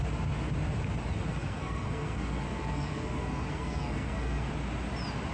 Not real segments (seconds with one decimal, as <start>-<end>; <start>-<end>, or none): 1.3-4.5

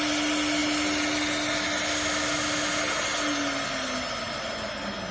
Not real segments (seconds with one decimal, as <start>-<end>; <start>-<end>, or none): none